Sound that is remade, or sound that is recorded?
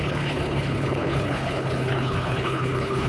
remade